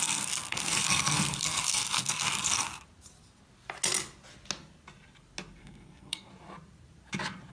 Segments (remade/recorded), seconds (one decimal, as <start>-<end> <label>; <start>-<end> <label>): 0.0-2.7 remade; 2.7-5.6 recorded; 5.6-6.3 remade; 6.3-7.5 recorded